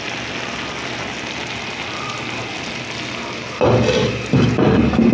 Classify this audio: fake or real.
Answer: real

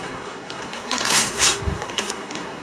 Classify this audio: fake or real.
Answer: fake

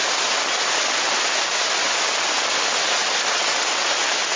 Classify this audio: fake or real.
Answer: real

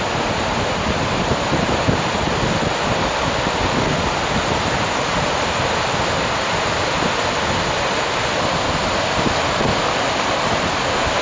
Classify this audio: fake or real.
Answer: real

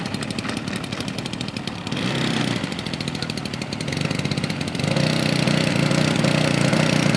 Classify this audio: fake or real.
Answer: fake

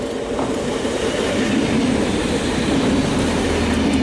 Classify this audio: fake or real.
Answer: real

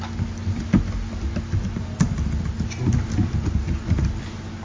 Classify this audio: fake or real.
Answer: real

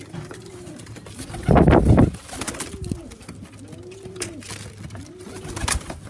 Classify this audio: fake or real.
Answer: real